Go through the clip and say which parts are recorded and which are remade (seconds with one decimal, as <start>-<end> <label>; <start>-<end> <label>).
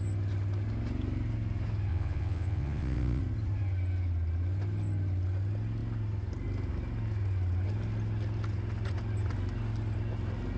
0.0-1.9 recorded; 1.9-3.2 remade; 3.2-10.6 recorded